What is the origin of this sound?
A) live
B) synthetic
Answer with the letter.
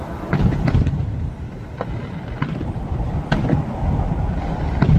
A